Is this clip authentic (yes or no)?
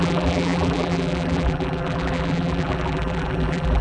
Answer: no